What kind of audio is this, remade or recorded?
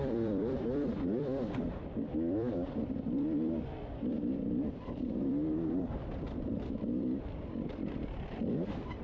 remade